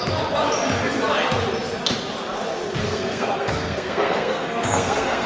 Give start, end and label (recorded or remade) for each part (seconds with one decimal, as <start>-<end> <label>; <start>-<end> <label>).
0.0-2.8 recorded; 2.8-5.3 remade